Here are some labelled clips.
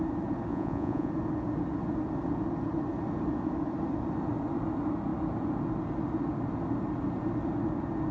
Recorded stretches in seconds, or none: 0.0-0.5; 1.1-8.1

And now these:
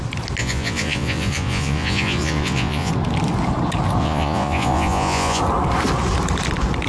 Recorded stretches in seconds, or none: 0.0-0.4; 2.9-4.0; 5.4-6.9

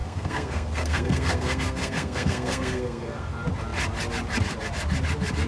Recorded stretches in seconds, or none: 3.3-5.5

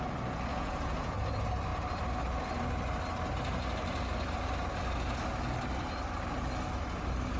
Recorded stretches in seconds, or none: 0.0-0.5; 1.2-7.4

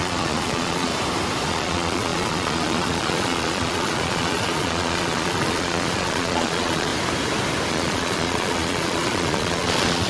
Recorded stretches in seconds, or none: 0.9-1.5; 6.9-7.7

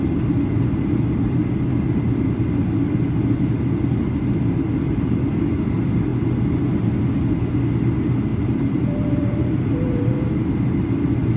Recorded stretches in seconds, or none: 0.0-8.3; 10.7-11.4

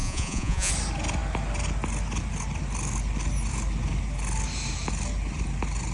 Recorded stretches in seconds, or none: 0.7-5.9